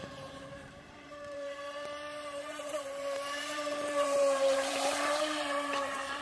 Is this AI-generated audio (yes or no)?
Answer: yes